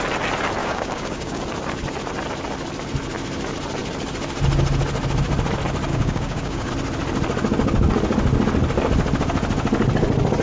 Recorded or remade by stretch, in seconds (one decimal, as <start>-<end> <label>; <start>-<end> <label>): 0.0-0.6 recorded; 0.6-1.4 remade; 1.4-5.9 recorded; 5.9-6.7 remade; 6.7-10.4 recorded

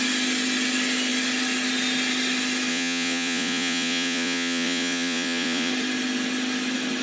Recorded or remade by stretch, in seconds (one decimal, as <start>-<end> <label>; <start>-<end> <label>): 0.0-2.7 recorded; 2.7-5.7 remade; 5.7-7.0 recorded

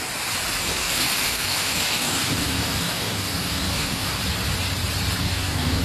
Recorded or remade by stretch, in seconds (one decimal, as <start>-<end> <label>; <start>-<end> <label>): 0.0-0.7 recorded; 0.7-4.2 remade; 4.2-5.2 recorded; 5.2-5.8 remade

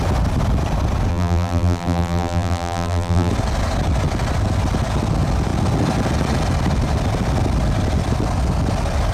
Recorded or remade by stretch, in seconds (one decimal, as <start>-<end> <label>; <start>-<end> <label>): 0.0-1.1 recorded; 1.1-3.3 remade; 3.3-9.1 recorded

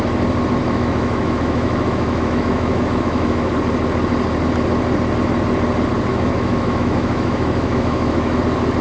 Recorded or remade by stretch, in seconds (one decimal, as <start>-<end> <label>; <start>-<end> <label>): 0.0-0.6 recorded; 0.6-3.5 remade; 3.5-6.1 recorded; 6.1-8.4 remade; 8.4-8.8 recorded

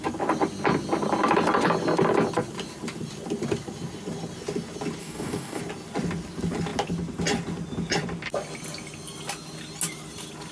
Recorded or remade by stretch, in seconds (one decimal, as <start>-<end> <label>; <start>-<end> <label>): 0.0-5.0 recorded; 5.0-5.6 remade; 5.6-10.5 recorded

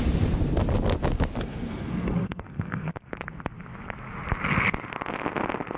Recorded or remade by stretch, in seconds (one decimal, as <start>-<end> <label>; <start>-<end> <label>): 0.0-1.4 recorded; 1.4-3.1 remade; 3.1-5.8 recorded